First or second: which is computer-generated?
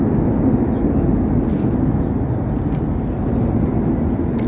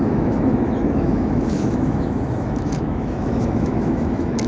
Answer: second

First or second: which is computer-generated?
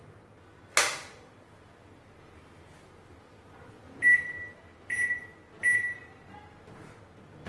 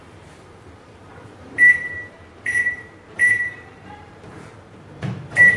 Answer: second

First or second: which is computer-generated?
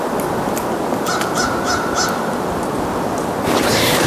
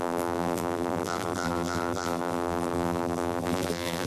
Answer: second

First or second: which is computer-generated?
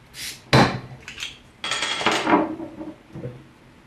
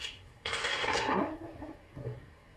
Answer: second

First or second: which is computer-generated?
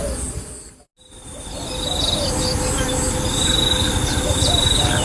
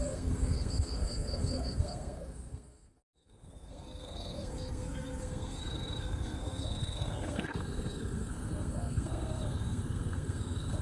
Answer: second